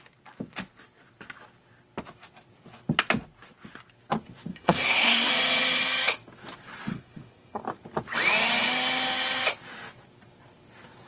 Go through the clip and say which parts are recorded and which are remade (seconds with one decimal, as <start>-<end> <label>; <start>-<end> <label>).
0.0-4.5 recorded; 4.5-5.3 remade; 5.3-6.9 recorded; 6.9-7.6 remade; 7.6-11.1 recorded